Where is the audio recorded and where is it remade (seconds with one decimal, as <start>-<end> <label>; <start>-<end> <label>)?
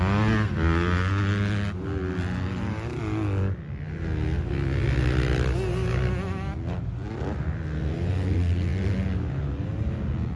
0.0-10.4 recorded